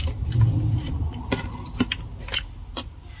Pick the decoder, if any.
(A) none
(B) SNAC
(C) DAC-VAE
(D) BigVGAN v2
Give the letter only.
A